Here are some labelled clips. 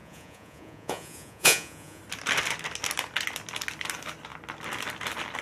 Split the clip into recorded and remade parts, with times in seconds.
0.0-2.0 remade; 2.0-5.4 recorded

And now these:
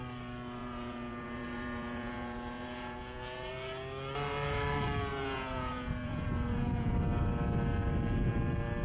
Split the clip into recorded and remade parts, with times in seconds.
0.0-0.6 recorded; 0.6-3.5 remade; 3.5-5.1 recorded; 5.1-6.9 remade; 6.9-8.8 recorded